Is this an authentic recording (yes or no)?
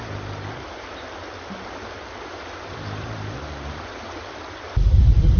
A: yes